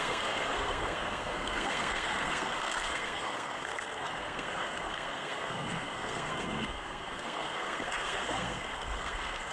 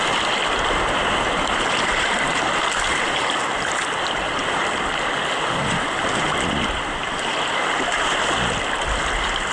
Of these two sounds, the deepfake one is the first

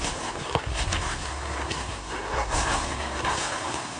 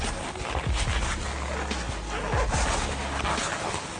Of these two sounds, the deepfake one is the first